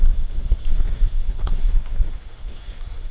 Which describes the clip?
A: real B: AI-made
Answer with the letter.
B